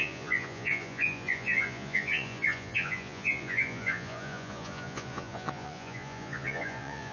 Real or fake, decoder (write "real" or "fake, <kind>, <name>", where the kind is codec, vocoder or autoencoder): fake, vocoder, Vocos